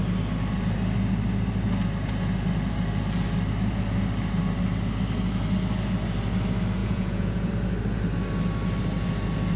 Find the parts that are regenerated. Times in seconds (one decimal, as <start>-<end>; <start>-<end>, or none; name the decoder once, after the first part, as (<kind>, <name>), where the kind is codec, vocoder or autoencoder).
6.8-7.5 (vocoder, Vocos)

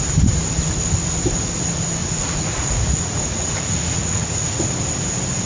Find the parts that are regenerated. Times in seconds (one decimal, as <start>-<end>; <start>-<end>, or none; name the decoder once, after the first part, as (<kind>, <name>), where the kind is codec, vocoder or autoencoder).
2.0-4.6 (vocoder, Vocos)

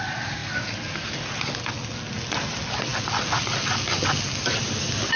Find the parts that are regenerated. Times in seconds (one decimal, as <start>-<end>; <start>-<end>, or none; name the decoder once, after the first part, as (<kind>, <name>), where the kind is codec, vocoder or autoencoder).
none

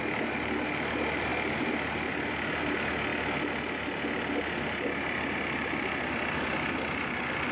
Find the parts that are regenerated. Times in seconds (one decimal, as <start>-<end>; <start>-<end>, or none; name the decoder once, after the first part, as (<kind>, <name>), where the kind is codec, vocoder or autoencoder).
none